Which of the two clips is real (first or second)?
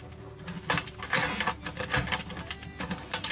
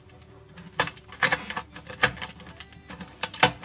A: first